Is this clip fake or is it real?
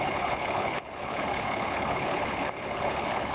fake